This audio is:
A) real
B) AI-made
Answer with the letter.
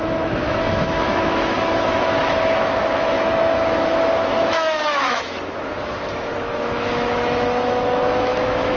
B